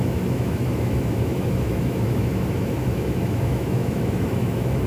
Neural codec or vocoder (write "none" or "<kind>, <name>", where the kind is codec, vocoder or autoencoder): autoencoder, DAC-VAE